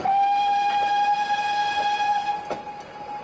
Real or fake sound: real